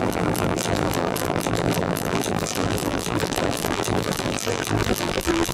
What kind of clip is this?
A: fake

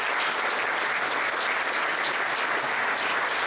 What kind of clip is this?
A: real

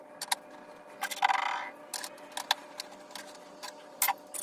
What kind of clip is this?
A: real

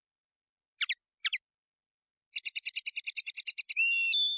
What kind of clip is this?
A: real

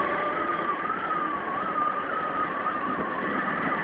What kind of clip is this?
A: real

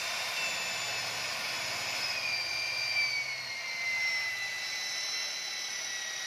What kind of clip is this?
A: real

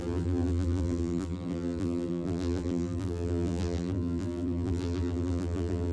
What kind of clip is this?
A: fake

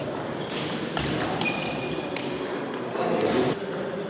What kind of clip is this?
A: real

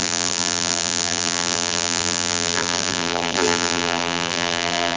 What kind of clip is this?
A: fake